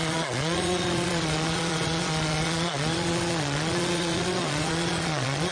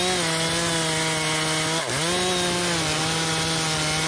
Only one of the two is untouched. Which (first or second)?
second